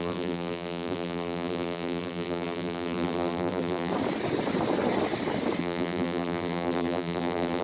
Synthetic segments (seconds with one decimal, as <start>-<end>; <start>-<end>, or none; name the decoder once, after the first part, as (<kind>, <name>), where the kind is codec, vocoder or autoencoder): 0.0-3.9 (vocoder, BigVGAN v2); 5.6-7.6